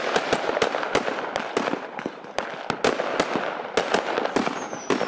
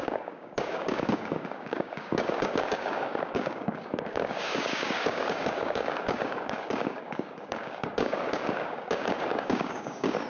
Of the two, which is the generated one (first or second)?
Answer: second